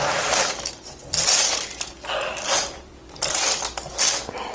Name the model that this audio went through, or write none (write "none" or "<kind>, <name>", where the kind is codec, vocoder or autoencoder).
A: none